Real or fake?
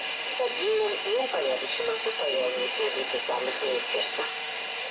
fake